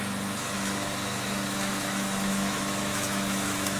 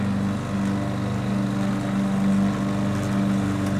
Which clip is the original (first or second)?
second